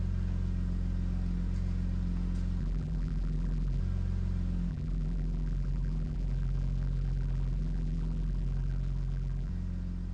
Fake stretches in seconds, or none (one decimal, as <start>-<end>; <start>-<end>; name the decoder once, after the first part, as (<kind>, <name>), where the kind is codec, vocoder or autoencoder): 2.6-3.8 (vocoder, BigVGAN v2); 4.7-9.5